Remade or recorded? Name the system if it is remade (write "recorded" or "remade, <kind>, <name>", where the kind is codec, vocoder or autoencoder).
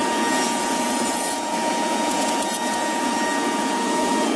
remade, vocoder, Vocos